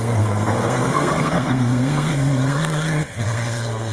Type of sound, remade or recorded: remade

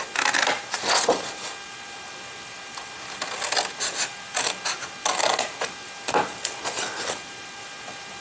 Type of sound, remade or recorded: recorded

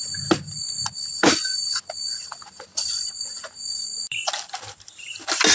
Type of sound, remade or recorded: recorded